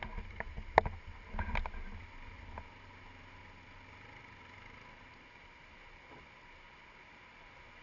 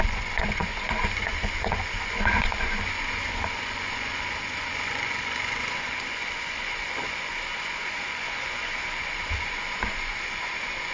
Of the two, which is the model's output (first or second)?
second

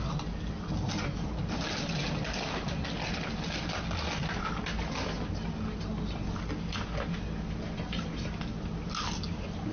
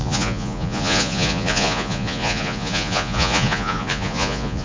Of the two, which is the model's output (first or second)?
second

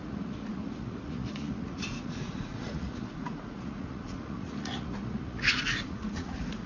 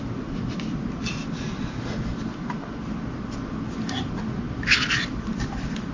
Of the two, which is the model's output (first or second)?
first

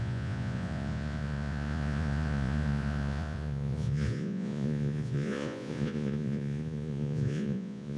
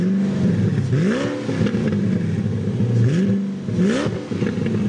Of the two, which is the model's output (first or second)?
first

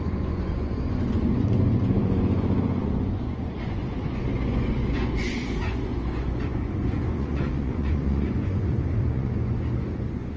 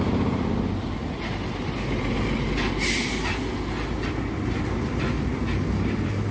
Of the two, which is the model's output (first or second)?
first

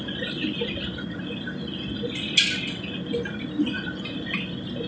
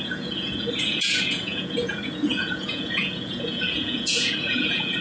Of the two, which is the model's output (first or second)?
second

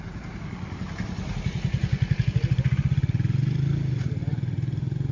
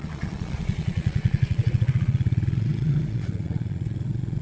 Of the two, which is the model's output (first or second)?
second